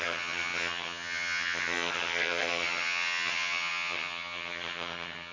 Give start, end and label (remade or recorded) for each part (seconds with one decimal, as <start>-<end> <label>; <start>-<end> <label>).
0.0-5.3 remade